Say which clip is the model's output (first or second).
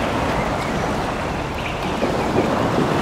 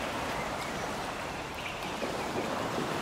second